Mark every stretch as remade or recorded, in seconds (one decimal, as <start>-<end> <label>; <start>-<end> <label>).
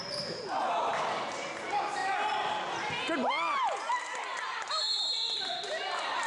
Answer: 0.0-6.3 recorded